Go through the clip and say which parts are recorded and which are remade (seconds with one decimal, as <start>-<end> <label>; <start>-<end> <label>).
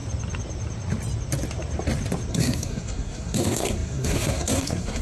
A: 0.0-2.3 recorded; 2.3-5.0 remade